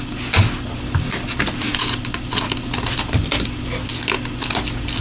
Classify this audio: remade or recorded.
recorded